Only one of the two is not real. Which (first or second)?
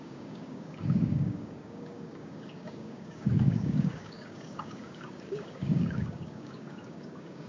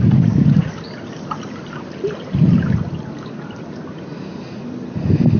first